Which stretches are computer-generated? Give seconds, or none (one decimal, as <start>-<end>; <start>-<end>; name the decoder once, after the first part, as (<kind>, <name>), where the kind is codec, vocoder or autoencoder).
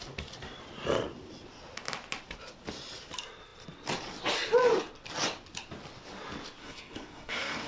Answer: 6.6-7.7 (codec, SNAC)